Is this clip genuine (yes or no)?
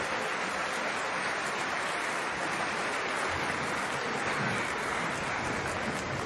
yes